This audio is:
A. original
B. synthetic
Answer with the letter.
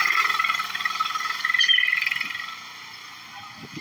A